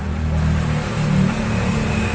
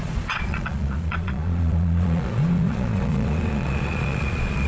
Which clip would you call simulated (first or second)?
second